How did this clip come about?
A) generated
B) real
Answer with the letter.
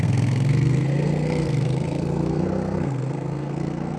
A